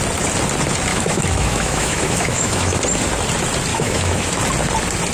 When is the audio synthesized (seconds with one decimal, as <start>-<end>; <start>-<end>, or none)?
0.9-2.8; 3.7-4.4